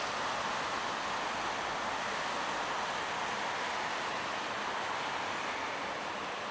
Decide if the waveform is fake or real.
fake